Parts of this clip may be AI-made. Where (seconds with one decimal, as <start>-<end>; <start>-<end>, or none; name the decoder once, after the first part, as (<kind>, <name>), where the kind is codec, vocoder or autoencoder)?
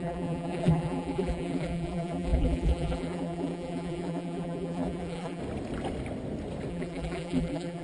0.0-5.4 (vocoder, BigVGAN v2); 6.7-7.8